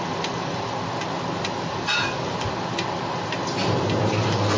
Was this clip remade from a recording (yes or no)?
no